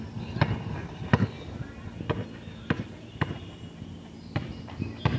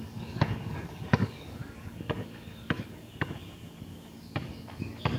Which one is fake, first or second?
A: second